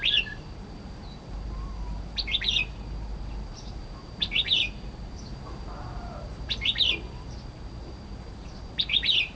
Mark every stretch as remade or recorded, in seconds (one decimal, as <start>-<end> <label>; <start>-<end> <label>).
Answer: 0.0-9.4 remade